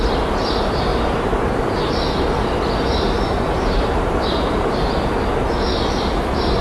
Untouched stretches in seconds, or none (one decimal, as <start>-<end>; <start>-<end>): 0.0-0.9; 4.9-6.6